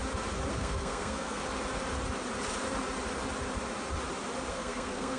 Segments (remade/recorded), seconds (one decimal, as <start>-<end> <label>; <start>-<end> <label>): 0.0-0.5 recorded; 0.5-1.4 remade; 1.4-4.5 recorded; 4.5-5.2 remade